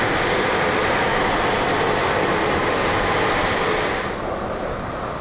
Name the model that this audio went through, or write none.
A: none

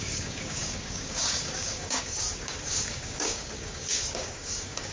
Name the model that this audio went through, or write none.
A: codec, DAC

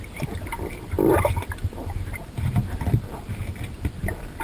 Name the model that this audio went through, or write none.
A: none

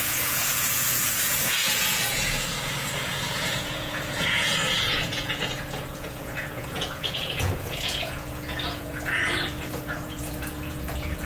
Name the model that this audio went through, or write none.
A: vocoder, Vocos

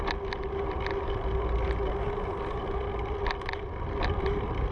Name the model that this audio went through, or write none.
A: none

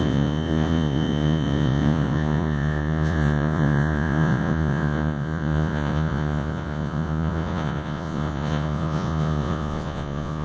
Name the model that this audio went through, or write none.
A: vocoder, Vocos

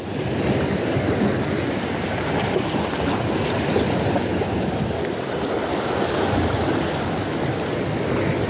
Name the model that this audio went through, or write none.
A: none